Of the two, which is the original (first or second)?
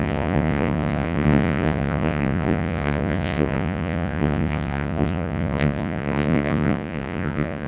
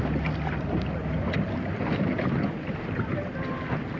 second